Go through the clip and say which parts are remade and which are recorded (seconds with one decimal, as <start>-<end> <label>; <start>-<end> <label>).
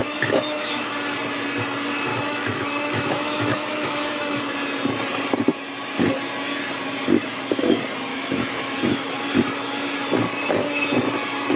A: 0.0-0.9 remade; 0.9-2.1 recorded; 2.1-4.4 remade; 4.4-8.1 recorded; 8.1-9.2 remade; 9.2-11.6 recorded